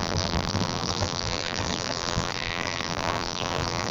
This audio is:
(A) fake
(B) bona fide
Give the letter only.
A